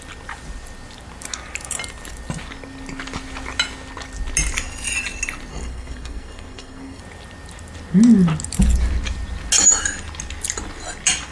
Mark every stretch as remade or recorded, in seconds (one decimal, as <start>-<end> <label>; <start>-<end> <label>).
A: 0.0-5.5 recorded; 5.5-7.0 remade; 7.0-11.3 recorded